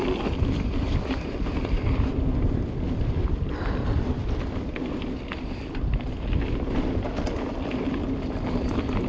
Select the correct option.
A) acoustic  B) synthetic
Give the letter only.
B